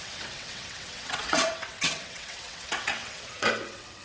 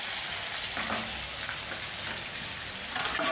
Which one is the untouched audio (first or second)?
second